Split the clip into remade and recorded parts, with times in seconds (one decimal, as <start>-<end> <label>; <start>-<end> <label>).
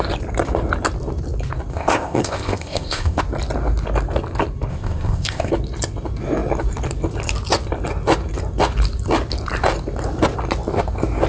0.0-1.7 recorded; 1.7-3.2 remade; 3.2-4.7 recorded; 4.7-5.5 remade; 5.5-11.3 recorded